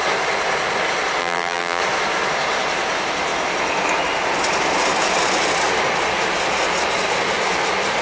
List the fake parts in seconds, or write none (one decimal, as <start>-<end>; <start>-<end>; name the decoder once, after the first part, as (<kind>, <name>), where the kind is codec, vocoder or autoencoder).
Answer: 1.2-1.8 (vocoder, BigVGAN v2)